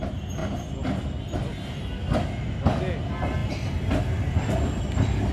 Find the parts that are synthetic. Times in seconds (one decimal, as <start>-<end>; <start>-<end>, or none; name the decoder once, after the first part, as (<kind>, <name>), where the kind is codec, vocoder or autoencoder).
none

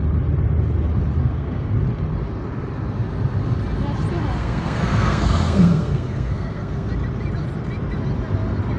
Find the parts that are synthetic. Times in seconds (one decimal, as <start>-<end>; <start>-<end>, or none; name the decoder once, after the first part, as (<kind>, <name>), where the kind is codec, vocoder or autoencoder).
1.2-1.7 (codec, SNAC); 4.4-6.9